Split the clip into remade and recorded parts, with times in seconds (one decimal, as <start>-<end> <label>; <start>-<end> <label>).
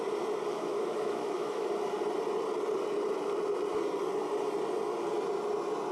0.0-0.5 recorded; 0.5-1.7 remade; 1.7-5.9 recorded